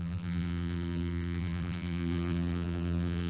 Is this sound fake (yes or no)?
yes